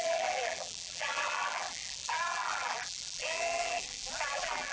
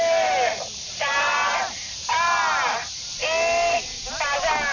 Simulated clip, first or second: first